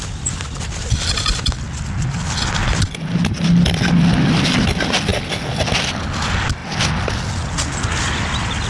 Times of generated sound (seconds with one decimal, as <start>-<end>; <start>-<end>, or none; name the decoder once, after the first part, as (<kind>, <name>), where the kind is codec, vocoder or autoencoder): none